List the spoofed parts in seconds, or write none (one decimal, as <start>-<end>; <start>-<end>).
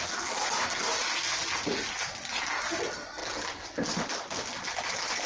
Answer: none